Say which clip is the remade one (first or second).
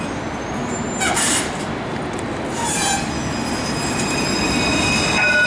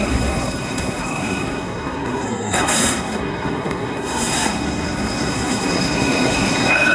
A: second